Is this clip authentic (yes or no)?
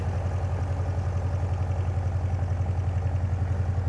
yes